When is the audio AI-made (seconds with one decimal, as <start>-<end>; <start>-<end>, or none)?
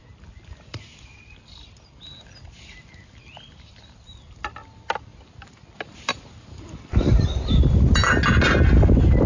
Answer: none